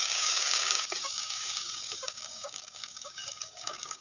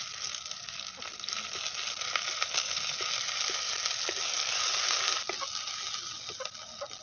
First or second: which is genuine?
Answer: second